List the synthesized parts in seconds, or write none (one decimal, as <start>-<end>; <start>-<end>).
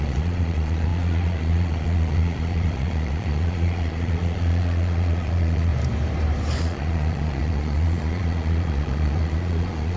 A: 0.0-5.7; 6.6-10.0